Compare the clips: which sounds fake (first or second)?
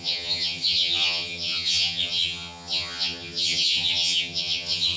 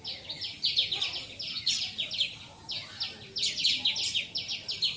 first